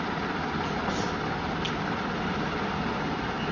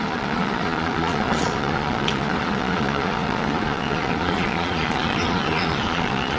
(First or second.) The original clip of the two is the first